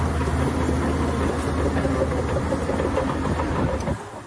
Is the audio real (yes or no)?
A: yes